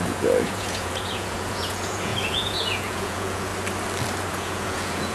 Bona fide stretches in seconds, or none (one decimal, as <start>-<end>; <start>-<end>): 3.5-4.3